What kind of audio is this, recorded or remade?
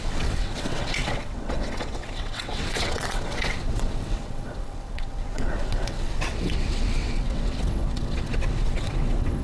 remade